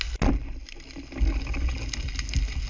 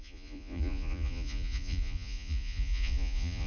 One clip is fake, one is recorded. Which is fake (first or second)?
second